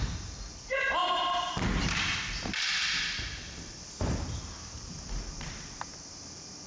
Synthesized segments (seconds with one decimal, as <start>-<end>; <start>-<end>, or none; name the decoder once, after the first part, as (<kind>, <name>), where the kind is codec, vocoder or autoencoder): none